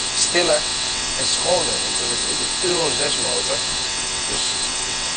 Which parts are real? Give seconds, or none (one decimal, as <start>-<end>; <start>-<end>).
none